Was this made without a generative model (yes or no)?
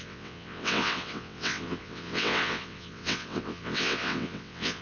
no